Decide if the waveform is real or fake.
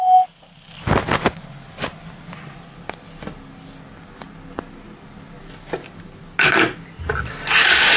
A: real